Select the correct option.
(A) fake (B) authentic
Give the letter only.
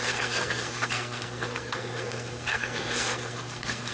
A